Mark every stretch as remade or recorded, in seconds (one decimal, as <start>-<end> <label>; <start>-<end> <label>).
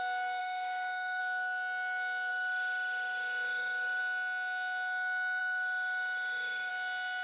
0.0-0.4 recorded; 0.4-1.2 remade; 1.2-2.3 recorded; 2.3-4.0 remade; 4.0-5.4 recorded; 5.4-6.7 remade; 6.7-7.2 recorded